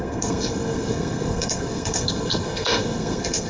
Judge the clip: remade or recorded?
remade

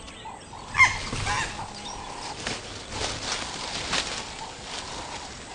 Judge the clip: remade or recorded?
recorded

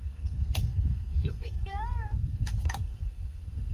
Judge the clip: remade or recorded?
remade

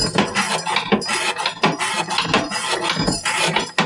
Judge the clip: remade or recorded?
recorded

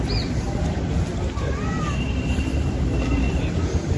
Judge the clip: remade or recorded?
recorded